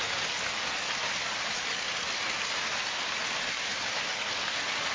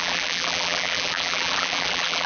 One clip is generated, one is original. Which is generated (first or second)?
second